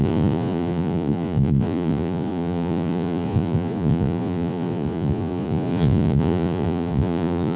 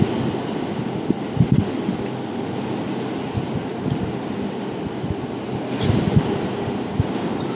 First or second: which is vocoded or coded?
first